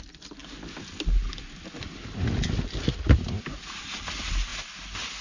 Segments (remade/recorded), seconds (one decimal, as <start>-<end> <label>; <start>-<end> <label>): 0.0-5.2 recorded

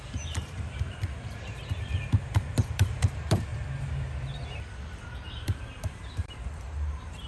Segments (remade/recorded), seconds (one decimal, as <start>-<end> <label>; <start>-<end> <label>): 0.0-3.5 remade; 3.5-4.8 recorded; 4.8-7.3 remade

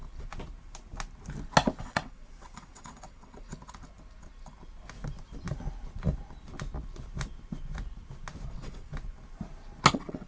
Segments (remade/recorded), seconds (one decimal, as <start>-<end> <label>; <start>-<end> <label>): 0.0-1.8 recorded; 1.8-3.5 remade; 3.5-8.5 recorded; 8.5-8.9 remade; 8.9-9.9 recorded; 9.9-10.3 remade

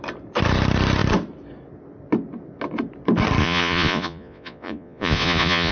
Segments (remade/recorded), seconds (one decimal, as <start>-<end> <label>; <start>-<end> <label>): 0.0-3.4 recorded; 3.4-5.7 remade

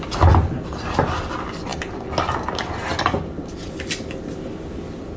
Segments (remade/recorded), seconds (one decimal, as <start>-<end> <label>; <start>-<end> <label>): 0.0-5.2 recorded

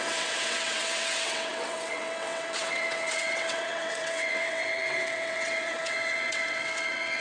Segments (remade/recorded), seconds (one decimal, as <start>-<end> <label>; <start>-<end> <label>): 0.0-7.2 remade